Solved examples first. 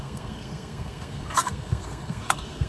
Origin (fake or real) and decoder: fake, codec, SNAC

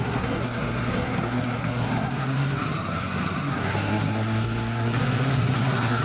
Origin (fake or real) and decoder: fake, codec, SNAC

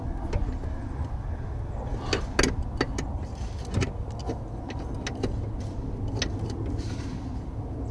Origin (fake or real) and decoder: real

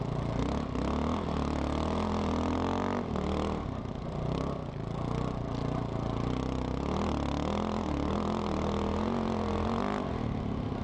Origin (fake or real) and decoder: real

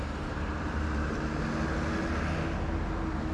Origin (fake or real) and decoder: real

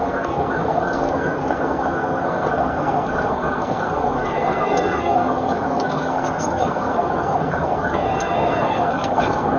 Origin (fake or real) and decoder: fake, codec, SNAC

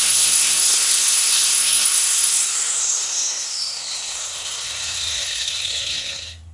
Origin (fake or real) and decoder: fake, codec, SNAC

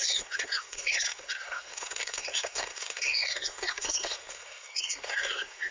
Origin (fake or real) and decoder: fake, codec, SNAC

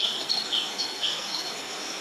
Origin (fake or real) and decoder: fake, codec, SNAC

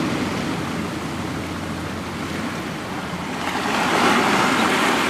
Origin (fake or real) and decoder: real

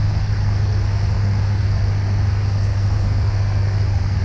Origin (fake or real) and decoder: fake, codec, SNAC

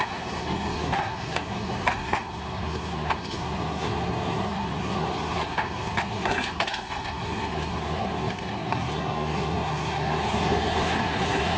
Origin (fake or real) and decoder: fake, codec, SNAC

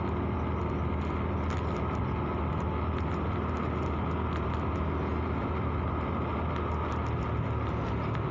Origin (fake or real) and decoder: real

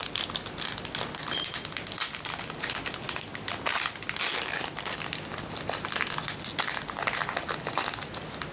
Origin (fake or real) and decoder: real